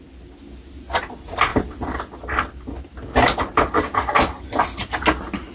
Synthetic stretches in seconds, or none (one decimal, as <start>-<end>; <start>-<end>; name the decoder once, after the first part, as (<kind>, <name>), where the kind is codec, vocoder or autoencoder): none